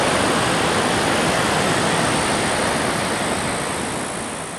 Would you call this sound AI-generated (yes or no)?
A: no